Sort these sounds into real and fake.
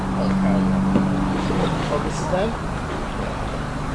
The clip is real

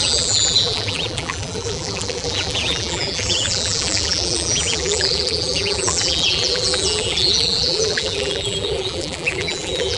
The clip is fake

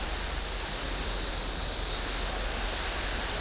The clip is real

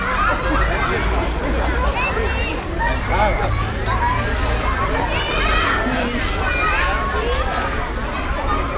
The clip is real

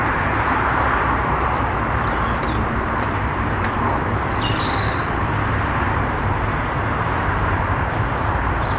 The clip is fake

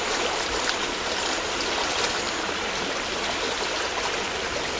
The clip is real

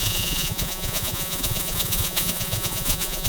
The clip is fake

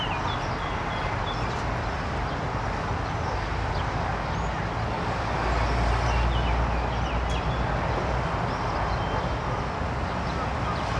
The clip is real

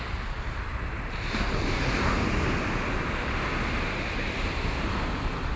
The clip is real